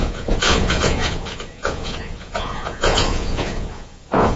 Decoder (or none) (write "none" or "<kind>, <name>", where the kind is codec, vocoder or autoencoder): vocoder, Vocos